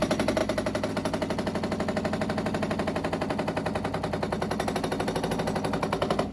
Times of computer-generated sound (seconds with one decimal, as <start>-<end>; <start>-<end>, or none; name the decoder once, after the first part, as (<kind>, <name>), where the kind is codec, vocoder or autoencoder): none

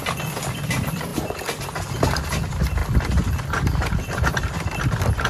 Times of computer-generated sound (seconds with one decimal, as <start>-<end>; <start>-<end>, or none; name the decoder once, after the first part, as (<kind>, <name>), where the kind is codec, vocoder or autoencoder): none